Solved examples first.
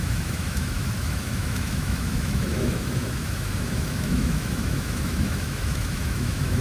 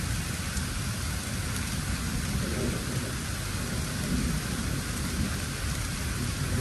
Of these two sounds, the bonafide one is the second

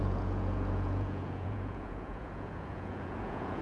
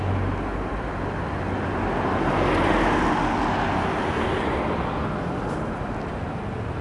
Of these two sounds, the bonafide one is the second